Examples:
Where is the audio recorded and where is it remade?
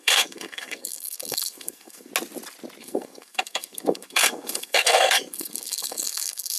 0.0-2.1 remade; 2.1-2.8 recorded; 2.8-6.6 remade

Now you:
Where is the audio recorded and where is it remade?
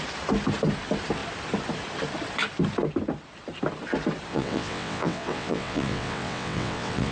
0.0-4.3 recorded; 4.3-7.1 remade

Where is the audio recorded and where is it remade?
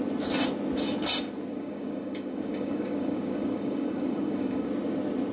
0.0-1.5 recorded; 1.5-4.7 remade; 4.7-5.3 recorded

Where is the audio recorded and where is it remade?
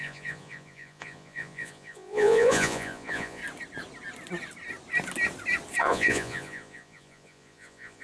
0.0-3.4 remade; 3.4-5.8 recorded; 5.8-8.0 remade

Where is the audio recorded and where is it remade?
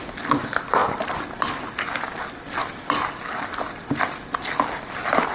0.0-5.3 recorded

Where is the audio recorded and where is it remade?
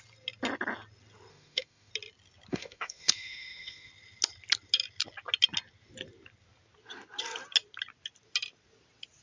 0.0-1.3 recorded; 1.3-1.9 remade; 1.9-2.5 recorded; 2.5-3.9 remade; 3.9-9.2 recorded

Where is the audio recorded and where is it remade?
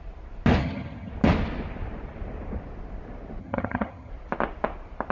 0.0-0.6 recorded; 0.6-1.1 remade; 1.1-3.4 recorded; 3.4-4.1 remade; 4.1-5.1 recorded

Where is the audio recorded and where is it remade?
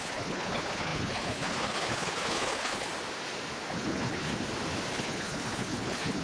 0.0-2.9 remade; 2.9-3.7 recorded; 3.7-4.3 remade; 4.3-4.9 recorded; 4.9-6.2 remade